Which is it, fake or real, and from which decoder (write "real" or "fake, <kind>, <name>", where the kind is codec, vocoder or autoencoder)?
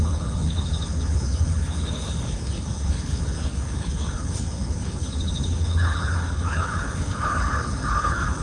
fake, codec, HILCodec